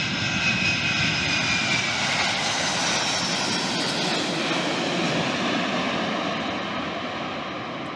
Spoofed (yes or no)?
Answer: no